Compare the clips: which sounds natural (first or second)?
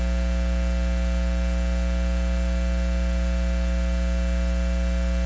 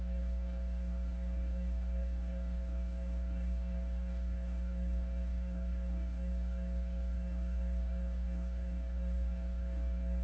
first